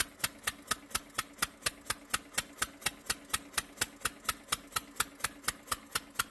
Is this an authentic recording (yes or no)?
yes